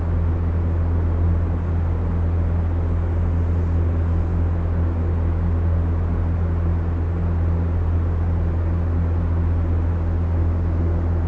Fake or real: real